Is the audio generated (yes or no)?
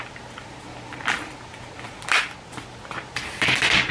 no